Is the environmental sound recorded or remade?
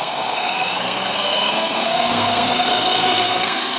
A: remade